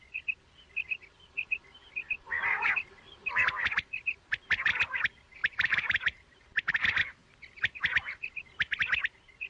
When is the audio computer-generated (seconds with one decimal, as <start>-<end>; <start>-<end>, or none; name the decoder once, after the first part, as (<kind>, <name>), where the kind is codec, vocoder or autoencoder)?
2.4-3.5 (vocoder, BigVGAN v2); 5.4-6.7